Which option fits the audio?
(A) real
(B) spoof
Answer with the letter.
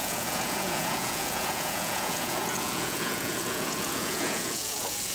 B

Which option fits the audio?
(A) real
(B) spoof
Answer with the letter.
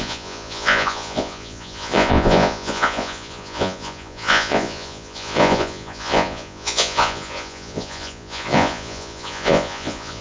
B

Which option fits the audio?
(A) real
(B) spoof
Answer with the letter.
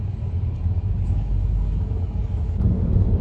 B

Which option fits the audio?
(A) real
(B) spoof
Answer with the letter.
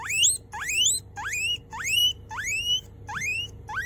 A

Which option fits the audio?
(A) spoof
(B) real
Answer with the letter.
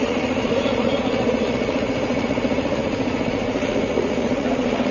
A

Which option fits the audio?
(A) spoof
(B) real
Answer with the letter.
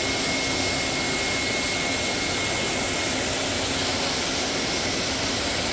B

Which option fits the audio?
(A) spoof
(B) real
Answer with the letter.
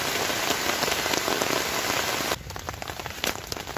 B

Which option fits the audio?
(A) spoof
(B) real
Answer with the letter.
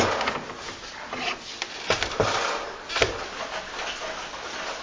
B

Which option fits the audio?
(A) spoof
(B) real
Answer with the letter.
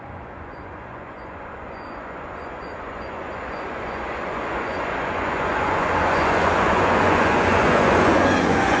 A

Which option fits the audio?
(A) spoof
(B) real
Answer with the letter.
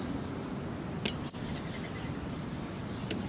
B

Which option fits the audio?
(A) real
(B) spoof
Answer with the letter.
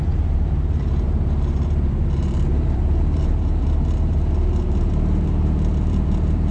B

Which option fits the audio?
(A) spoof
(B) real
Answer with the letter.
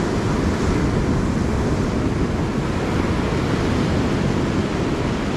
B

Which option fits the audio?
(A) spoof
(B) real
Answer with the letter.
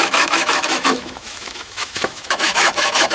A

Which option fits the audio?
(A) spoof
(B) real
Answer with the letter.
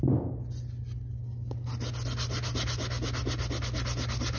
B